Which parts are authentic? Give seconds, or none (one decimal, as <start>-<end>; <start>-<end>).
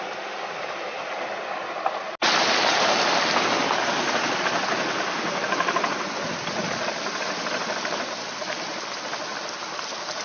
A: 0.0-10.2